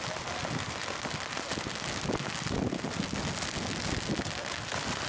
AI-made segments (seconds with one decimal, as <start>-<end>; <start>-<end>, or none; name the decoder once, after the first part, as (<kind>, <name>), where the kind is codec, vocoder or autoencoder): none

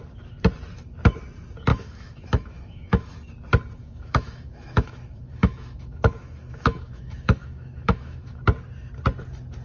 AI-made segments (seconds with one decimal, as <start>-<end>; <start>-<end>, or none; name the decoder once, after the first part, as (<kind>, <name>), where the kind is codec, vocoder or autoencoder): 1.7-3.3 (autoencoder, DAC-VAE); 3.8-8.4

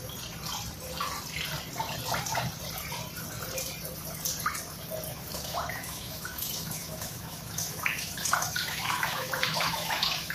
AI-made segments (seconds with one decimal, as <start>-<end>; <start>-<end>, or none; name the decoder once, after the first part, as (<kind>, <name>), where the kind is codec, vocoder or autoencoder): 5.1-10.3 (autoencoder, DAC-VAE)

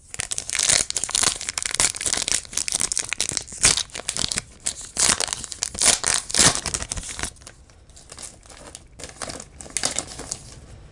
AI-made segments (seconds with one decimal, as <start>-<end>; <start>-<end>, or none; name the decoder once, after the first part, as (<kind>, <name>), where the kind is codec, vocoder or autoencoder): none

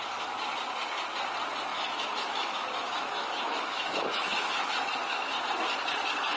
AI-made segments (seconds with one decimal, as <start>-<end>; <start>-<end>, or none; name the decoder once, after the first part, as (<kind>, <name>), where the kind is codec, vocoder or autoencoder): 1.7-5.5 (autoencoder, DAC-VAE)